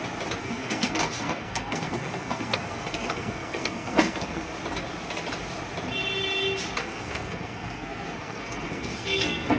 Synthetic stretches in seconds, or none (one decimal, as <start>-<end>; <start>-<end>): 0.4-4.5; 6.8-9.6